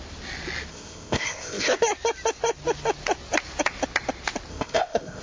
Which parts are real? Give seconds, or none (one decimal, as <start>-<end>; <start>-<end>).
0.0-0.7; 1.8-4.5